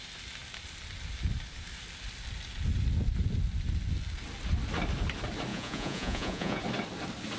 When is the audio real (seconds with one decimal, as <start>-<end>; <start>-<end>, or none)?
0.0-5.5; 6.6-7.4

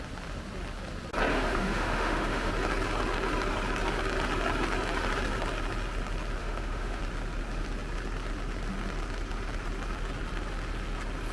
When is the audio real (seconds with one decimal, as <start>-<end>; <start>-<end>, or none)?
0.0-1.3; 2.5-6.4; 7.0-11.3

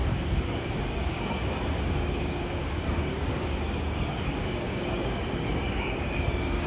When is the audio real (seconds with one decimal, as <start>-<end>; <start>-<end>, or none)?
none

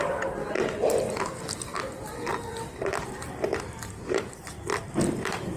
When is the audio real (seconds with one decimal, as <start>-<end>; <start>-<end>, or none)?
0.0-5.6

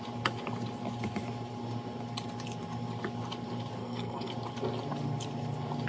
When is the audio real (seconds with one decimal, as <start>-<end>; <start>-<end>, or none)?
0.0-3.8; 4.3-5.9